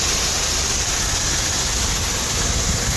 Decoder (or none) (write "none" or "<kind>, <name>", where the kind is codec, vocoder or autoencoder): none